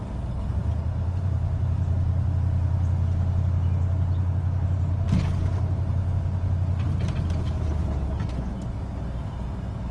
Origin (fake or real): real